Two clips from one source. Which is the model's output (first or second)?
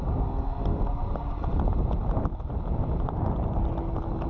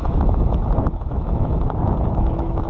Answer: second